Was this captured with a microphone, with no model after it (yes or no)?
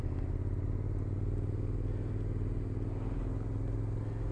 yes